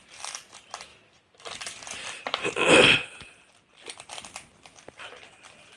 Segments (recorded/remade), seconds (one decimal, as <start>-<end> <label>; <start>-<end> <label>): 0.0-5.8 recorded